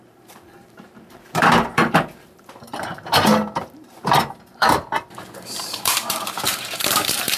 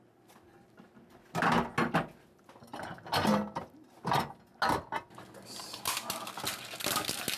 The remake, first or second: first